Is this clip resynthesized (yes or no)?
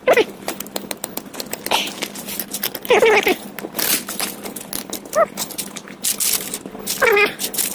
no